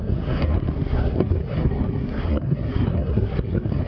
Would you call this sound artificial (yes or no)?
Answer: yes